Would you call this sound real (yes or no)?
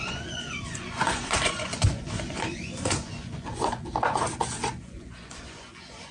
no